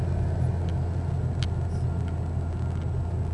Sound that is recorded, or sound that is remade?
recorded